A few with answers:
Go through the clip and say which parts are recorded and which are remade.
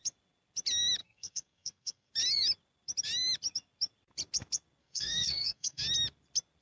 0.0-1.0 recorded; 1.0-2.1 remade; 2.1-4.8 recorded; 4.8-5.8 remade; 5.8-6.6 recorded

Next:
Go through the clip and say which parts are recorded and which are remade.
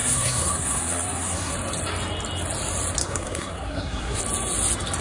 0.0-1.5 remade; 1.5-3.0 recorded; 3.0-4.2 remade; 4.2-5.0 recorded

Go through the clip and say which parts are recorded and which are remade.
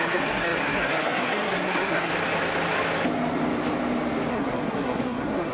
0.0-2.1 remade; 2.1-4.3 recorded; 4.3-5.5 remade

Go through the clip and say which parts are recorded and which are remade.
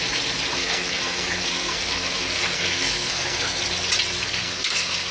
0.0-0.5 recorded; 0.5-3.6 remade; 3.6-4.2 recorded; 4.2-5.1 remade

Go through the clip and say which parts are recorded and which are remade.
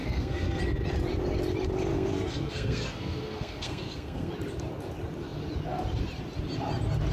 0.0-0.6 remade; 0.6-1.9 recorded; 1.9-4.3 remade; 4.3-7.1 recorded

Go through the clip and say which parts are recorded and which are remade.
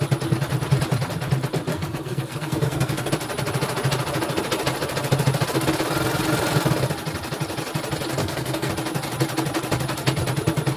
0.0-1.7 recorded; 1.7-3.1 remade; 3.1-8.2 recorded; 8.2-8.7 remade; 8.7-10.8 recorded